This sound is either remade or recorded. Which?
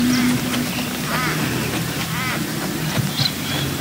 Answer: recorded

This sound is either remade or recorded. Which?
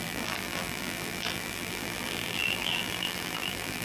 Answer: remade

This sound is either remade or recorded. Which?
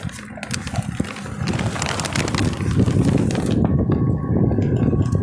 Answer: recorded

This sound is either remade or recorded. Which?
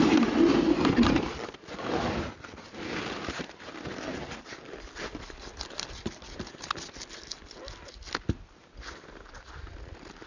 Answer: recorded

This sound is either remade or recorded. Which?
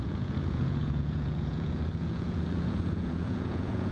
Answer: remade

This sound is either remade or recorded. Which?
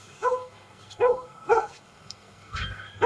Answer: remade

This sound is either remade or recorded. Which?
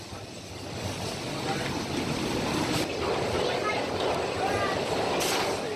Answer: recorded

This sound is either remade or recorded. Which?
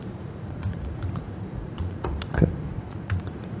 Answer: remade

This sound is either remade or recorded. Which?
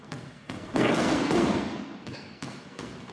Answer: remade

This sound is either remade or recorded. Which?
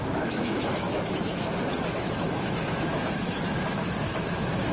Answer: remade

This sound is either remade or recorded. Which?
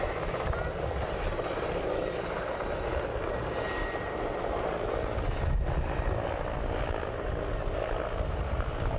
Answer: recorded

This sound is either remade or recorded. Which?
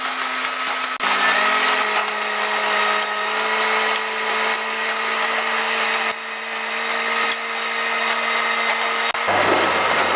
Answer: recorded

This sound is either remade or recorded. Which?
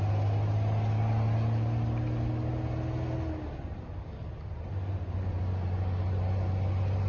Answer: recorded